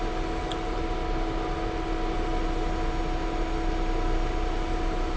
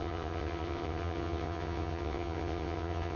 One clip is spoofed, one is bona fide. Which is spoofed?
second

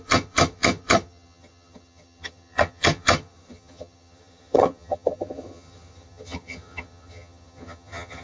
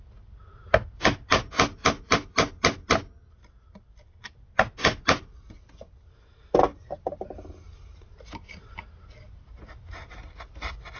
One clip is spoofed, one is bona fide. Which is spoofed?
first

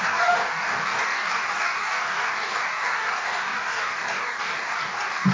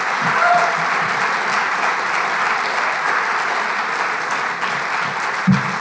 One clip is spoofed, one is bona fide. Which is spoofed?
first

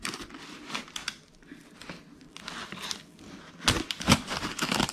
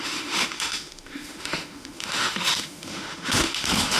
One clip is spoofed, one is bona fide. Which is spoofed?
second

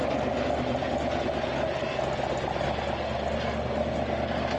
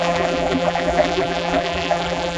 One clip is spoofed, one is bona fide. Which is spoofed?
second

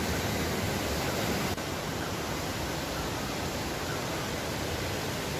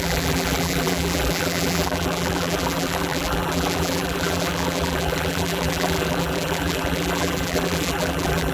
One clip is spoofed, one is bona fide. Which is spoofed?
second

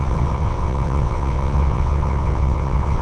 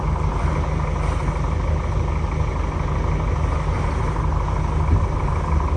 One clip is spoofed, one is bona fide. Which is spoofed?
first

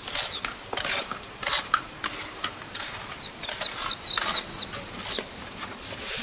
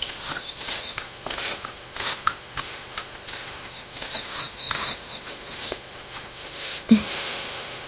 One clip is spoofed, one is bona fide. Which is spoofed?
second